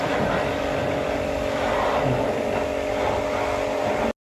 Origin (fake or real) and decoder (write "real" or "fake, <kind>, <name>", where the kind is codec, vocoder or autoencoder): real